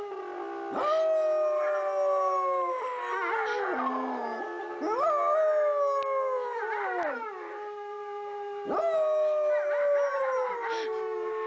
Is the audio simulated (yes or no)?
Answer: no